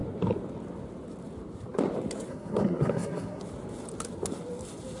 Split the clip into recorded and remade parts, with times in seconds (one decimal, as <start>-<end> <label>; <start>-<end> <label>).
0.0-2.3 recorded; 2.3-3.4 remade; 3.4-5.0 recorded

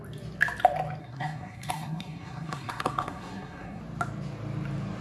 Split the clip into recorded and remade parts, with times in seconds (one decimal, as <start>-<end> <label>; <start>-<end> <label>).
0.0-1.0 recorded; 1.0-3.8 remade; 3.8-5.0 recorded